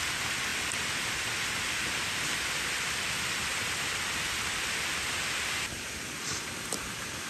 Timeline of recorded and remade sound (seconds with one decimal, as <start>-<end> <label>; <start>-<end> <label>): 0.0-7.3 recorded